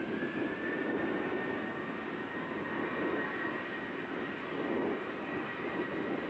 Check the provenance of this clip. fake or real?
real